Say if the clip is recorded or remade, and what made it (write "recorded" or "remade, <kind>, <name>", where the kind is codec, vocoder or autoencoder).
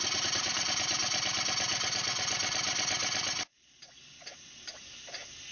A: recorded